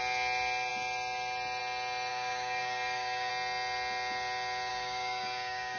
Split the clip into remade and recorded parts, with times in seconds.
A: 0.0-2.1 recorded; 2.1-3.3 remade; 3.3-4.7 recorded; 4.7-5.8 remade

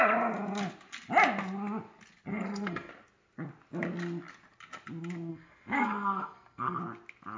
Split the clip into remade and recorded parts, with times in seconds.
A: 0.0-2.3 recorded; 2.3-2.9 remade; 2.9-5.3 recorded; 5.3-6.8 remade; 6.8-7.4 recorded

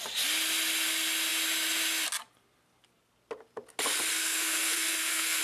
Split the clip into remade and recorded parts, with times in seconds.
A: 0.0-4.1 recorded; 4.1-5.4 remade

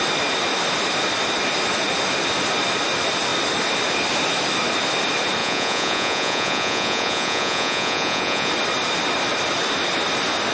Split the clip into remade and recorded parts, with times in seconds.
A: 0.0-5.4 recorded; 5.4-8.5 remade; 8.5-10.5 recorded

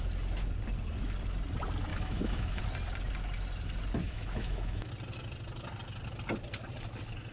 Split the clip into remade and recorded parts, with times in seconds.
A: 0.0-1.9 recorded; 1.9-2.6 remade; 2.6-4.0 recorded; 4.0-4.9 remade; 4.9-7.3 recorded